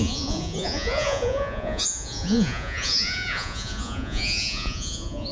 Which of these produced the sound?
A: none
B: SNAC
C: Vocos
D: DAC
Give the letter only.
C